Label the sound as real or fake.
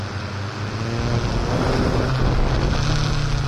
real